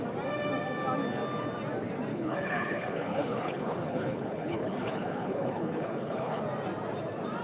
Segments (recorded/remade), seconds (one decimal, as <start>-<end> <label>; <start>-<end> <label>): 0.0-2.1 recorded; 2.1-6.4 remade; 6.4-7.4 recorded